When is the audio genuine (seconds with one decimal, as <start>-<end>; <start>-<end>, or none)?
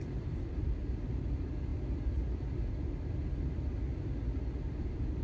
3.2-4.6